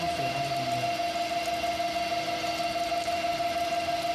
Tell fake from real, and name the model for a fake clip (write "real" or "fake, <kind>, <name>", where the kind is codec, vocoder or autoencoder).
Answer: real